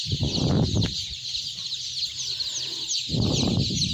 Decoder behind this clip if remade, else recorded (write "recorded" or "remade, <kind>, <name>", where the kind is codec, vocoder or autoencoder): recorded